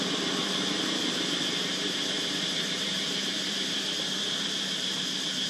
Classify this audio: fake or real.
fake